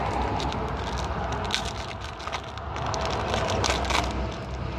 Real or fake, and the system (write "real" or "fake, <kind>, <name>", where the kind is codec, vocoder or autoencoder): real